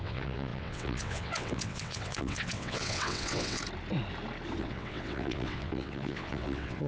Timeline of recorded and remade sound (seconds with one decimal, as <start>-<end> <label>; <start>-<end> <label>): 0.0-3.6 remade; 3.6-4.6 recorded; 4.6-6.9 remade